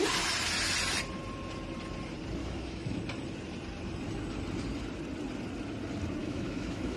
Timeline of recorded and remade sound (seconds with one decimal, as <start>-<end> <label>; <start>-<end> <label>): 0.0-2.4 recorded; 2.4-3.0 remade; 3.0-6.2 recorded; 6.2-7.0 remade